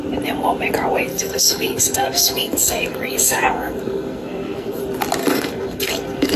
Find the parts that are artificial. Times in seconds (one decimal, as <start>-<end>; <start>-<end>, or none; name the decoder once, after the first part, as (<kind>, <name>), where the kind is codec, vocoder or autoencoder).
1.1-4.8 (codec, SNAC); 5.2-6.4